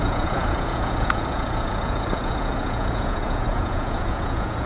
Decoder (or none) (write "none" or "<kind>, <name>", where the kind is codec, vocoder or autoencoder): vocoder, Vocos